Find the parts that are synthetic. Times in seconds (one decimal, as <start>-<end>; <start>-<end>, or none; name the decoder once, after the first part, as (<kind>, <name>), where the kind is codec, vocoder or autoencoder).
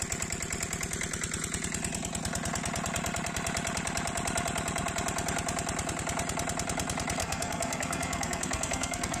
7.2-9.2 (codec, SNAC)